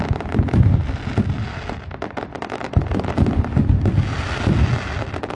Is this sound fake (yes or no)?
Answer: no